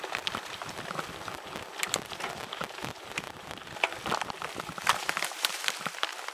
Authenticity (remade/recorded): remade